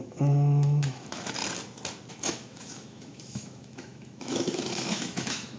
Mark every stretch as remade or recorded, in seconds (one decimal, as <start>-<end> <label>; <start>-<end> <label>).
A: 0.0-1.4 remade; 1.4-2.1 recorded; 2.1-5.6 remade